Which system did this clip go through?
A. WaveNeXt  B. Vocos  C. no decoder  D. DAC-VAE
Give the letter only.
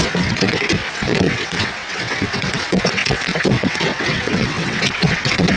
A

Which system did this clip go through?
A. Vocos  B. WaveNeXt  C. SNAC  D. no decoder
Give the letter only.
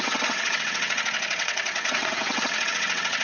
B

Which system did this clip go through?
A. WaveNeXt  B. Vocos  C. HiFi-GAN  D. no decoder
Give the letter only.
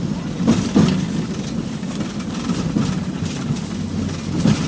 D